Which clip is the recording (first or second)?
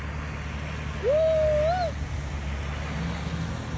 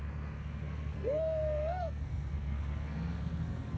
first